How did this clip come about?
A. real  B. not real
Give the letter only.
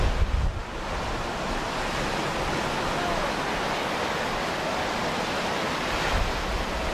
A